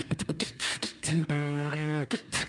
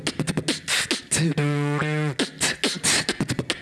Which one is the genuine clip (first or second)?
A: second